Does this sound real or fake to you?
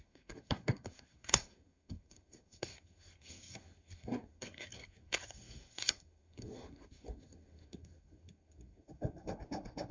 fake